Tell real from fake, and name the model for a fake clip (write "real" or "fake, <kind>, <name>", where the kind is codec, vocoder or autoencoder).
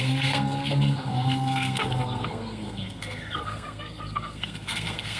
fake, codec, SNAC